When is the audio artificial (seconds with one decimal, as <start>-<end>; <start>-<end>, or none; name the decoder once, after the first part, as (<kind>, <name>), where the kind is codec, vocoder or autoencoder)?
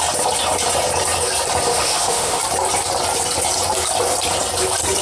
1.7-2.4 (autoencoder, DAC-VAE)